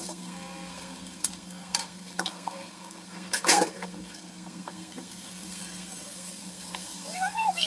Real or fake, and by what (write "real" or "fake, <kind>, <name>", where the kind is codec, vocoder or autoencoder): fake, codec, SNAC